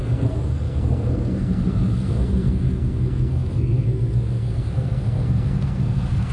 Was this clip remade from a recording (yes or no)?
yes